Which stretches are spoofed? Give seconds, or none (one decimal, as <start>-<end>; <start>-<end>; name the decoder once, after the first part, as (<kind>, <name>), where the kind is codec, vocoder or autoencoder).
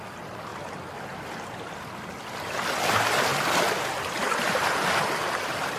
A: none